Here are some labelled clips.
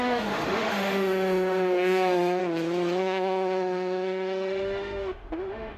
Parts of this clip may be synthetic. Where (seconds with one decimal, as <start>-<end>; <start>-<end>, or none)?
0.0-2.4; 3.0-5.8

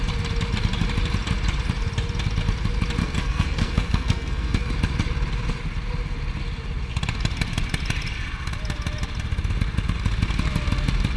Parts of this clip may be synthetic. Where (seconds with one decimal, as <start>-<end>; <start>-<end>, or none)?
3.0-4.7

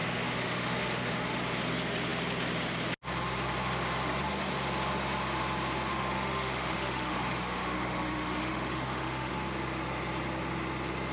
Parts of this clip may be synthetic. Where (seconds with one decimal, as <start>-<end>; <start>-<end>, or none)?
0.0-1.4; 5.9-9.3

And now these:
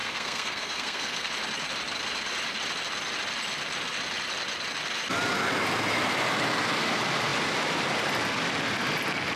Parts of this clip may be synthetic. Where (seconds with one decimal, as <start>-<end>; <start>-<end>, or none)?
0.0-1.3

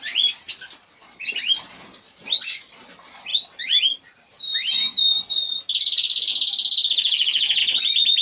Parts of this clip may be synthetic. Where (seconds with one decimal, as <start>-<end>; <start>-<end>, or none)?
none

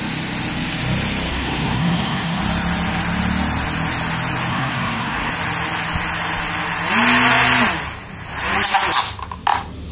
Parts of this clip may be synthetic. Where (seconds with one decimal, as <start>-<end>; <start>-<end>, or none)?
1.3-2.4; 4.5-5.3